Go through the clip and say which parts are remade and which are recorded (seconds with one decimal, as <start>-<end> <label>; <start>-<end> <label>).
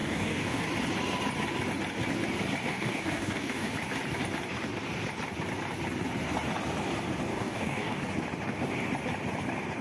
0.0-0.6 remade; 0.6-2.7 recorded; 2.7-3.7 remade; 3.7-7.3 recorded; 7.3-8.0 remade; 8.0-9.8 recorded